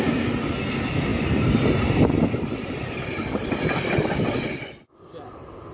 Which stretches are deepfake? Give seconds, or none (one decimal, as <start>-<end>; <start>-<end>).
none